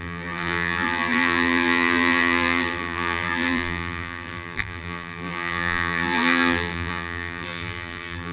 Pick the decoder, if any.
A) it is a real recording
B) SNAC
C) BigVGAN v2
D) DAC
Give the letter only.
C